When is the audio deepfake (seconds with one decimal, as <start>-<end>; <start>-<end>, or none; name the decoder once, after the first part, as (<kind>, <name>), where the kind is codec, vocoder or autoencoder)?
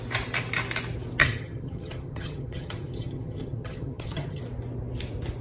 1.2-4.4 (vocoder, HiFi-GAN)